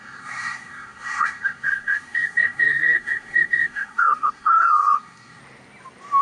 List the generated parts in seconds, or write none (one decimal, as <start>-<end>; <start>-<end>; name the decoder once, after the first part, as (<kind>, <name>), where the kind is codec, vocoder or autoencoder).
0.0-5.4 (codec, SNAC)